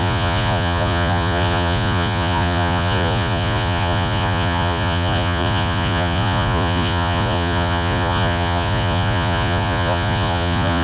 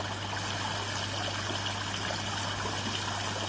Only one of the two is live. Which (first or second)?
second